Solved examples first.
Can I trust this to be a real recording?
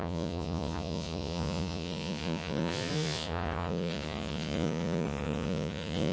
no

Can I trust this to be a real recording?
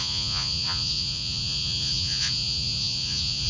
no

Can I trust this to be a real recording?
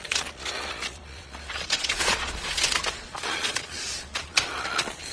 no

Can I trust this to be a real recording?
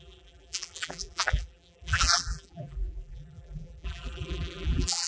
no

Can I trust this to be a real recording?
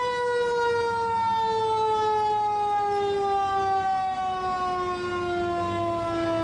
yes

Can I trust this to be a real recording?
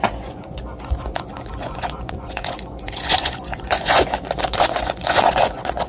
no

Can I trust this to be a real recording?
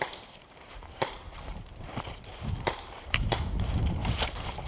no